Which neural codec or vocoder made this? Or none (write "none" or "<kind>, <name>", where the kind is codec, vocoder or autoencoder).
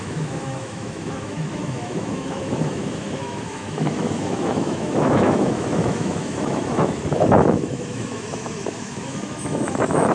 autoencoder, DAC-VAE